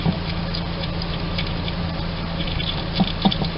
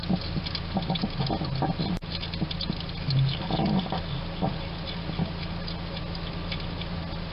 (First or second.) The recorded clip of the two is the second